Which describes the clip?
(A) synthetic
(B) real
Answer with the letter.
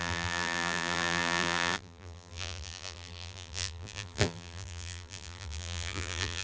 A